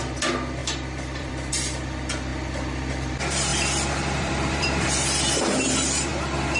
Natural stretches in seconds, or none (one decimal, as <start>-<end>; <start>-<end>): 0.0-0.6; 1.5-3.5; 5.0-6.6